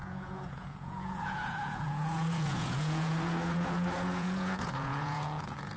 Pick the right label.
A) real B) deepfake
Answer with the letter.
B